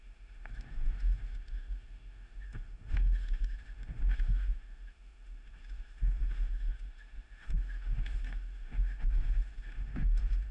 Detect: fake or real fake